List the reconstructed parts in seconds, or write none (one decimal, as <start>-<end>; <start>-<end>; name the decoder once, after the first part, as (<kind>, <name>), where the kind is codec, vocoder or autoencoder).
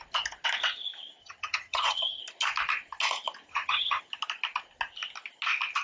1.2-2.2 (vocoder, HiFi-GAN); 3.5-4.0